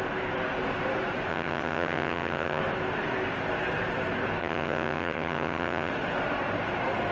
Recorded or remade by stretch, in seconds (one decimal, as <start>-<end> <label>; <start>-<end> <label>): 0.0-1.3 recorded; 1.3-2.6 remade; 2.6-4.4 recorded; 4.4-5.9 remade; 5.9-7.1 recorded